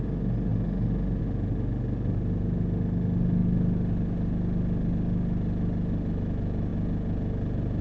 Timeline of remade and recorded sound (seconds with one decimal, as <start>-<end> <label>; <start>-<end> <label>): 0.0-7.8 recorded